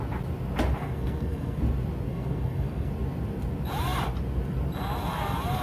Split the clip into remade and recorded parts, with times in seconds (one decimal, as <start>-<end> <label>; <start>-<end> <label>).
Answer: 0.0-0.8 recorded; 0.8-1.6 remade; 1.6-2.1 recorded; 2.1-2.9 remade; 2.9-5.6 recorded